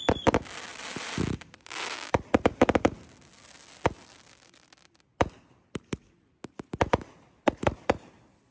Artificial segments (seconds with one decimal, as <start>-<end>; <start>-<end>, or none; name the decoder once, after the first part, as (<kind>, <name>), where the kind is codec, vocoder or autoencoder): none